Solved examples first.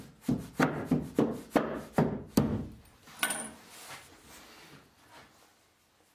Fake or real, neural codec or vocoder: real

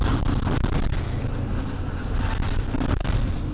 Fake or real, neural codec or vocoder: real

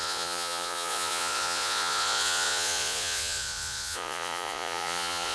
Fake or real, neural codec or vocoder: fake, vocoder, Vocos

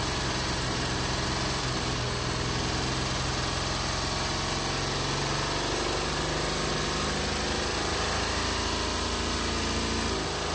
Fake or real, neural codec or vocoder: real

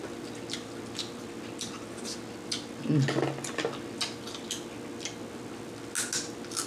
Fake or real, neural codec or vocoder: real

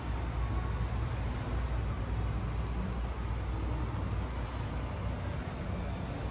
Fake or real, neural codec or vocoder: real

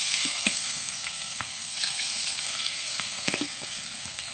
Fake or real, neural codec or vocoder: fake, codec, SNAC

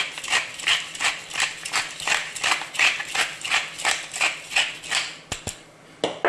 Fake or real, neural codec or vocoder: real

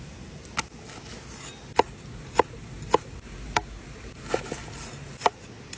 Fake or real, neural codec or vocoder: real